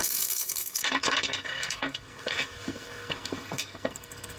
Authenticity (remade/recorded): remade